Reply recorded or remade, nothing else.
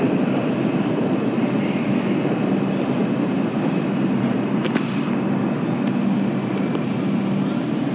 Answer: recorded